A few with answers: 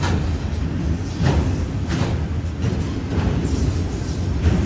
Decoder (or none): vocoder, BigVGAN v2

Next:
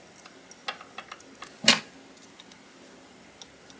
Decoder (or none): none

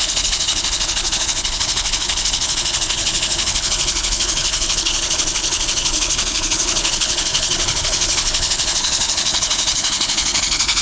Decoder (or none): codec, HILCodec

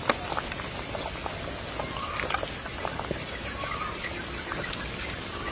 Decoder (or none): none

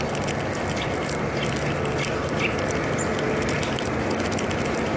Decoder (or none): none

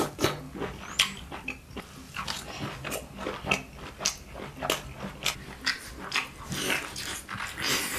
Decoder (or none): none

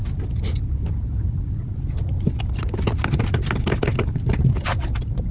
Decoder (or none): vocoder, BigVGAN v2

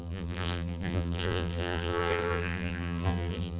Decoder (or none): vocoder, BigVGAN v2